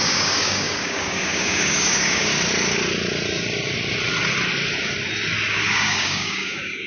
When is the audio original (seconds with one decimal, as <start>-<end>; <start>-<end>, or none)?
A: 2.3-5.5

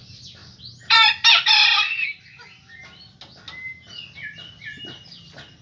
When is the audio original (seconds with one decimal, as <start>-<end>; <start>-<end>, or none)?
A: 0.0-5.6

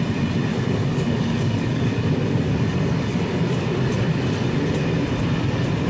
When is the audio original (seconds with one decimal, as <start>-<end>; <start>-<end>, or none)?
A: 0.0-0.5; 3.6-5.9

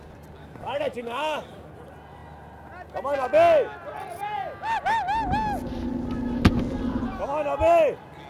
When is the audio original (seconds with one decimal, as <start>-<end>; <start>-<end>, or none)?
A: 0.0-0.4; 1.7-8.3

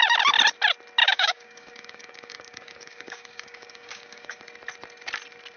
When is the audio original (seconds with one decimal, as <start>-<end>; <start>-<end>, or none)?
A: 0.0-1.0; 4.4-5.6

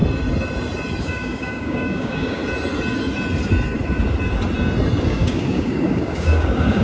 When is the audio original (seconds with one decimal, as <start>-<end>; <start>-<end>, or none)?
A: 0.0-1.0; 2.4-5.0

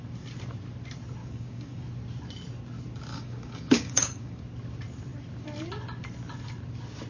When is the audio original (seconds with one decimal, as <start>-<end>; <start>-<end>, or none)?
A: 0.0-1.2; 1.8-3.1; 4.4-7.1

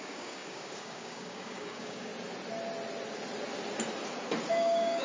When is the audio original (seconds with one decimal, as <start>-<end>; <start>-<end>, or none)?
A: 2.1-4.5